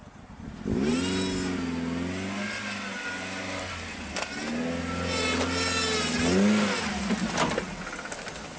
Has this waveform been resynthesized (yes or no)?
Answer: no